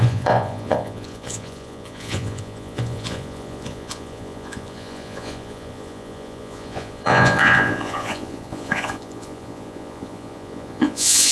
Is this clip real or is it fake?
fake